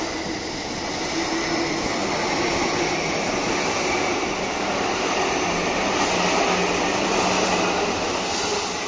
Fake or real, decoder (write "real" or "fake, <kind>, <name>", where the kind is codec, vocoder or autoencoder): real